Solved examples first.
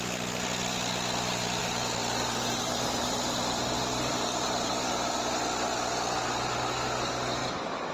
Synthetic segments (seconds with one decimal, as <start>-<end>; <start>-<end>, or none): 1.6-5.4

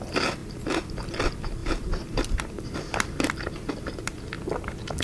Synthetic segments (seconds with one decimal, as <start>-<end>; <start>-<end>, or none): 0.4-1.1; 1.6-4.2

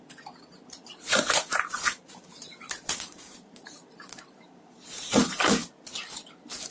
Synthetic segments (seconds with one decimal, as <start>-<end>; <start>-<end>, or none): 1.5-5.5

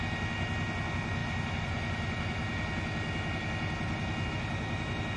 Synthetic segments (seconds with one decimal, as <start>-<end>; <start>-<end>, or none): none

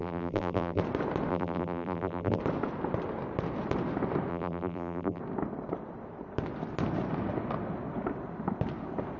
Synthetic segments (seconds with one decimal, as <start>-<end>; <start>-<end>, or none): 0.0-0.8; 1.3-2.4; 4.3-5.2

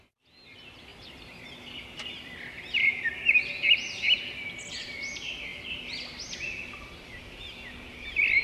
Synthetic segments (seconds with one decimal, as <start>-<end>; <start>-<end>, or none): 0.9-3.2; 5.5-7.1

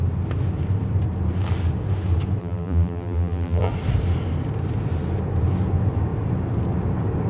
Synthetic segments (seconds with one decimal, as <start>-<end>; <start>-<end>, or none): 2.4-3.7

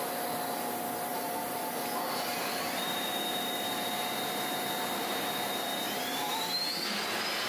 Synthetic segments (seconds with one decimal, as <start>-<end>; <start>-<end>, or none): 1.1-1.8; 2.3-6.8